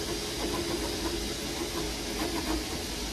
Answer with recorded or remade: recorded